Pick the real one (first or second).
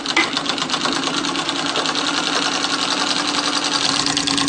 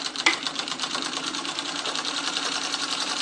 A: first